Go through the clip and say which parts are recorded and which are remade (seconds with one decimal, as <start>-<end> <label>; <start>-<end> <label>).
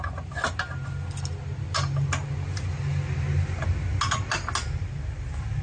0.0-5.6 recorded